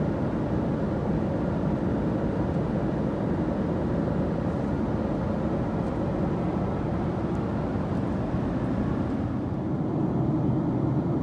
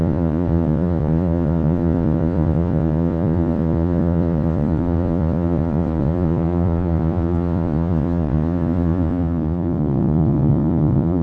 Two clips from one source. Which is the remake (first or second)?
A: second